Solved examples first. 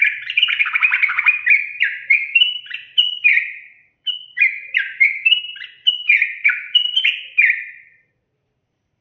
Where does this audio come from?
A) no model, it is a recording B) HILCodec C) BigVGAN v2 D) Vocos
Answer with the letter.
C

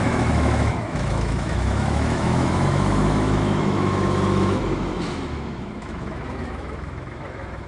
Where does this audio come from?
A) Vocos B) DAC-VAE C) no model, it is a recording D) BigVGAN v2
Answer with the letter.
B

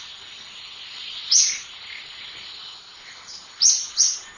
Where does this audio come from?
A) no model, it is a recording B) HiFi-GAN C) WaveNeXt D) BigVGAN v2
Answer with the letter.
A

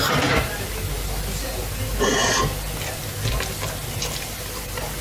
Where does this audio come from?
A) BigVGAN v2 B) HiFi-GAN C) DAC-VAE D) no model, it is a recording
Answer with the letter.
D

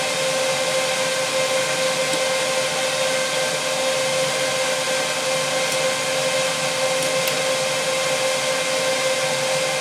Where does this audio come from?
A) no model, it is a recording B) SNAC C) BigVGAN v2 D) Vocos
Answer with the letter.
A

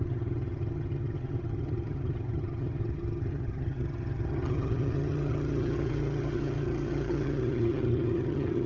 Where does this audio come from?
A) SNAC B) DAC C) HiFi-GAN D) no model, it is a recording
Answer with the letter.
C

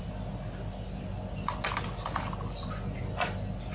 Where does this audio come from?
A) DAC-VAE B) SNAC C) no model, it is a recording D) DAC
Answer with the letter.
C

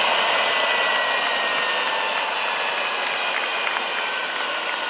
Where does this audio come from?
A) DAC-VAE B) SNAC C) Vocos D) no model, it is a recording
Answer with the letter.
D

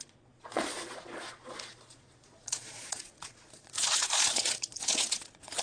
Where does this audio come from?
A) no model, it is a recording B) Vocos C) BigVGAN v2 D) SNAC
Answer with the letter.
B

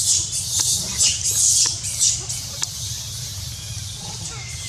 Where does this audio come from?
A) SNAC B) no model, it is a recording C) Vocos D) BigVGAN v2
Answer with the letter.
B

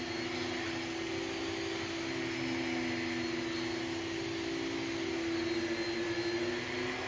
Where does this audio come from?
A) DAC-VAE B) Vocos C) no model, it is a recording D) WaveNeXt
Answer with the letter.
C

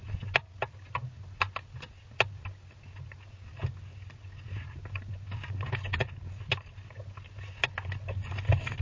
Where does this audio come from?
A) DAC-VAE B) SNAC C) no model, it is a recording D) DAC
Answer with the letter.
C